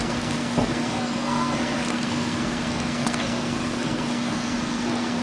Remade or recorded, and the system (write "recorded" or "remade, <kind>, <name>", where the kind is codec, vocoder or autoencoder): remade, codec, SNAC